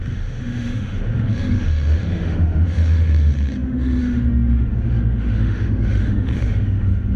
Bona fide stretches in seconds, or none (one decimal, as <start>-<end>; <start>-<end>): none